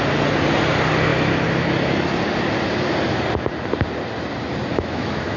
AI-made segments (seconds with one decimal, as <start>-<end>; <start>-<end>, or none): 4.7-5.4